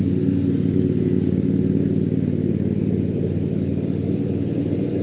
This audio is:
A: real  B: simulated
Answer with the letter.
A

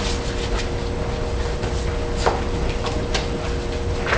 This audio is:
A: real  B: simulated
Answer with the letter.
A